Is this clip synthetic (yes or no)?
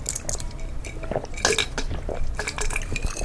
no